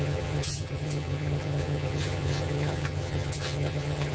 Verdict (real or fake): fake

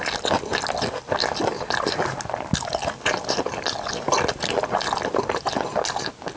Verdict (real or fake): real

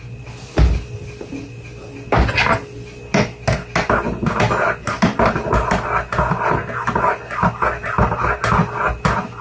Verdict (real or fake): real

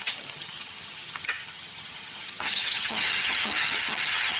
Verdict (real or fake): fake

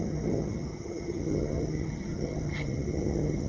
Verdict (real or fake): fake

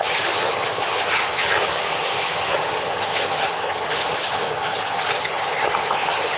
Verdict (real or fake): fake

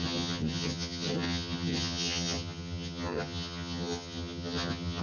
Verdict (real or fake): fake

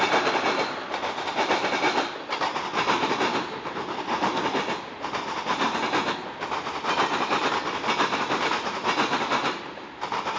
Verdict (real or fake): real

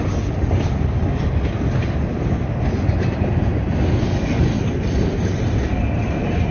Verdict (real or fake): real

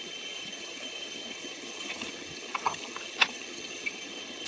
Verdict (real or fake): fake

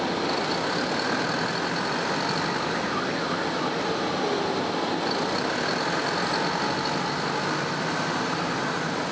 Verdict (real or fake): real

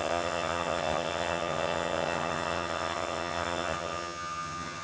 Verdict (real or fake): fake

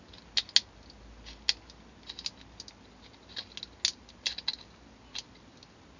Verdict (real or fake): real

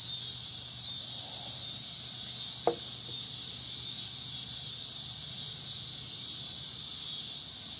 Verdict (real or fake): real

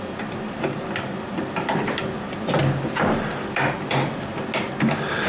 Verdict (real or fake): real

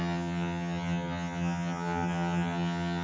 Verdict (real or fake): fake